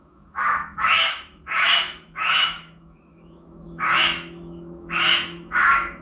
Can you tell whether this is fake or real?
fake